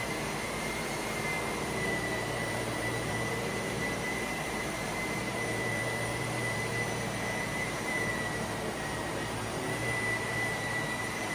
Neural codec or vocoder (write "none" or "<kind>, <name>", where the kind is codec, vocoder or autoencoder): vocoder, BigVGAN v2